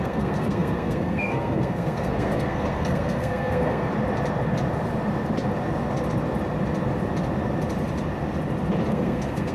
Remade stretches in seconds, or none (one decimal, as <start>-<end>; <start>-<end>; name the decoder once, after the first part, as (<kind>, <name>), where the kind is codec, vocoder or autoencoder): 0.0-3.9 (codec, SNAC); 8.9-9.5